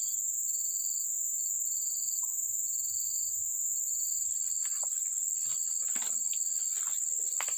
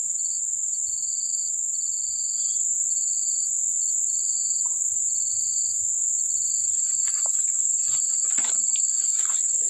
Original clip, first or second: first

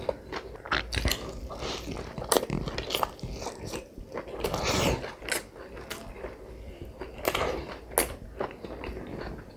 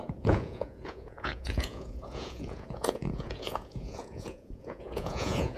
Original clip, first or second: first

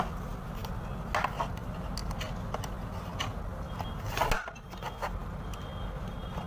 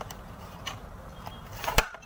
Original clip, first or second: first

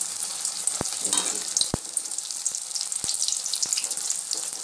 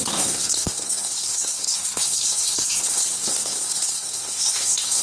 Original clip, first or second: first